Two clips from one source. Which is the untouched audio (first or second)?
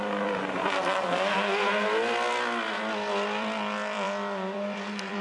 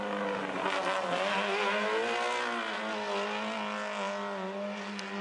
second